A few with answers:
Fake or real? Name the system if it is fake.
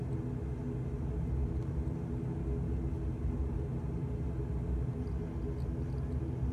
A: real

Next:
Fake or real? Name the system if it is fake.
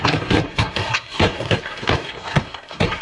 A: fake, codec, SNAC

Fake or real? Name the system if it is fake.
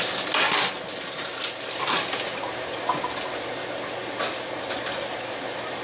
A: real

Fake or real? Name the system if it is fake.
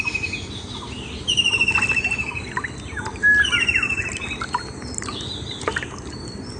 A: real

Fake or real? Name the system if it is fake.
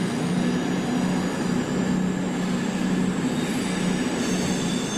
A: real